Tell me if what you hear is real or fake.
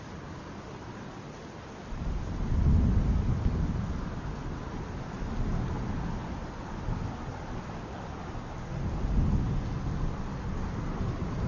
real